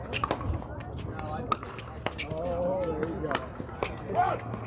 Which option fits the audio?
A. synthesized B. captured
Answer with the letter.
B